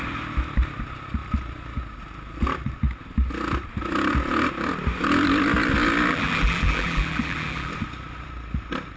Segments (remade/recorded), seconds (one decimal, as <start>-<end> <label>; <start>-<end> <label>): 0.0-6.1 recorded; 6.1-7.7 remade; 7.7-9.0 recorded